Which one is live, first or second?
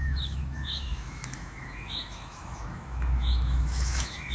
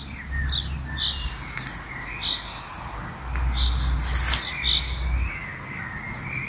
second